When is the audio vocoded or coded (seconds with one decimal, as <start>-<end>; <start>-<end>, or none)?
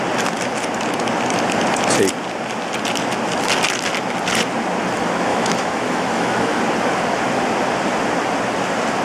5.3-6.6